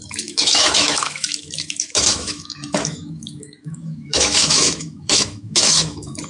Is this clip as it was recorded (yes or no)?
no